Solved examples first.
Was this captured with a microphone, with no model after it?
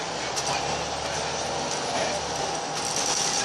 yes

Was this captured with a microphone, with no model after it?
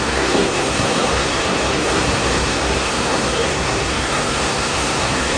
no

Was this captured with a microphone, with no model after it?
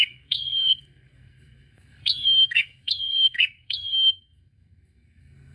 no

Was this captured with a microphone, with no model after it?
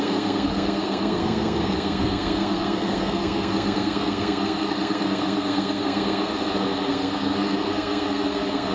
no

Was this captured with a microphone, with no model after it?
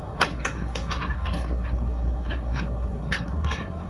no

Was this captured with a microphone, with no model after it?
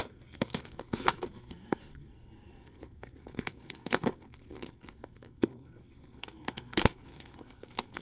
no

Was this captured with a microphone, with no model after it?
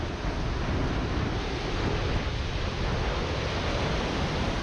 yes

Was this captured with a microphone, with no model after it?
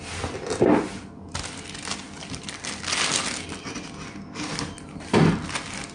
yes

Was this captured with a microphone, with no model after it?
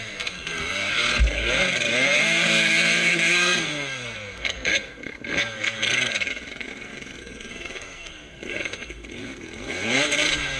no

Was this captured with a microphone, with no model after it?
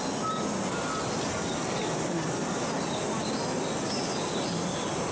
yes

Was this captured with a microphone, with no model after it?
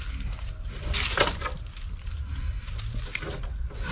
yes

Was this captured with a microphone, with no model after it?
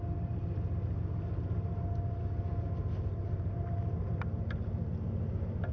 yes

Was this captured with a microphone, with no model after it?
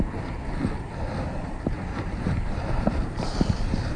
yes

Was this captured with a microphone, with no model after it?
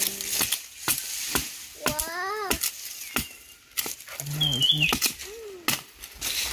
yes